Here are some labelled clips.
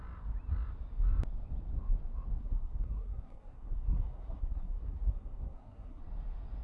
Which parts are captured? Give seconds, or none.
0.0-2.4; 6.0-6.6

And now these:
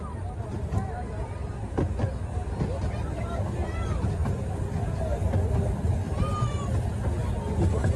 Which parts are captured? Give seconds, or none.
0.0-8.0

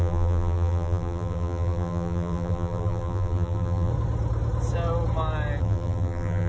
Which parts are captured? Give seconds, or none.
3.9-5.6

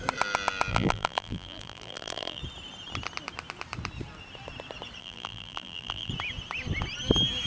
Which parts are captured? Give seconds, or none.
0.0-0.7; 2.4-5.0; 6.1-7.5

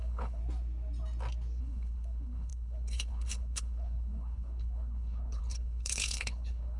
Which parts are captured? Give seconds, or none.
0.4-1.6

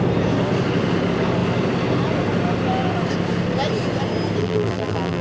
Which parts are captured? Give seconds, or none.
0.0-4.4

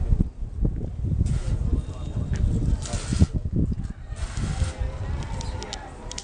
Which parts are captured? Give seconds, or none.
0.0-6.2

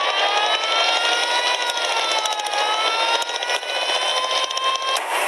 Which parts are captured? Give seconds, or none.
0.0-5.3